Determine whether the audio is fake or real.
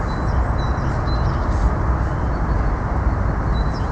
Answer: real